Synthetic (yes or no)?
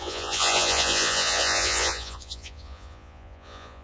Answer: yes